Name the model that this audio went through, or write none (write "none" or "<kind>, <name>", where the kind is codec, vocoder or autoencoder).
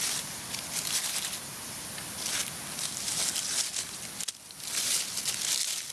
none